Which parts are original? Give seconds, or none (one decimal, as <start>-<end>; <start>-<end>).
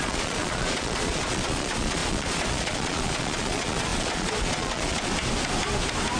5.1-6.2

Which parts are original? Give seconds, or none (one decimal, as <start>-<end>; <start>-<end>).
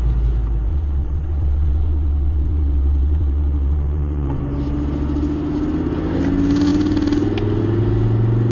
0.0-0.7; 4.4-8.5